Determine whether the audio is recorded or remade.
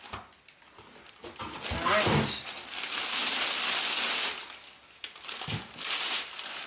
recorded